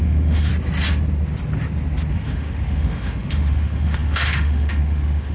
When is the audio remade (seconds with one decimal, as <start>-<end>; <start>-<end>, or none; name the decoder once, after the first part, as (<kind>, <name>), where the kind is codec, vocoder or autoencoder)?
0.0-0.5 (autoencoder, DAC-VAE); 2.1-5.3